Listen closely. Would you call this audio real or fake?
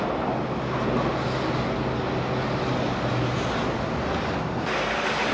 real